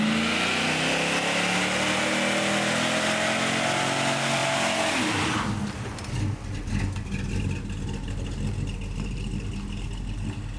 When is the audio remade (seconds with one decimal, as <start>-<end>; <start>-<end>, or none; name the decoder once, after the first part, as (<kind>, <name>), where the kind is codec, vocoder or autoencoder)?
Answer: none